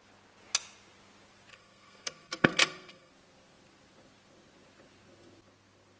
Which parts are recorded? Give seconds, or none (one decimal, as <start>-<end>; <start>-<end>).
0.0-1.5; 3.1-6.0